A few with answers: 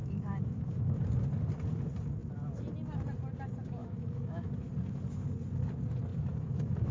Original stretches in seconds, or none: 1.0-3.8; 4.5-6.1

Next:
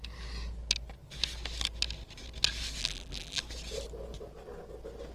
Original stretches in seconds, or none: 0.0-2.8; 3.4-5.1

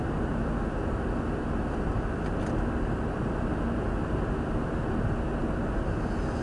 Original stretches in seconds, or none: 0.0-6.4

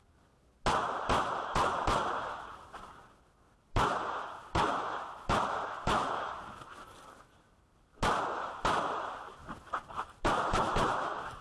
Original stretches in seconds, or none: 0.0-11.4

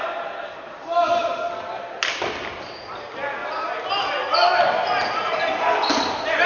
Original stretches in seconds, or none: 0.0-6.5

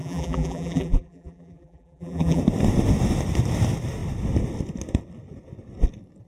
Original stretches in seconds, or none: 2.4-6.3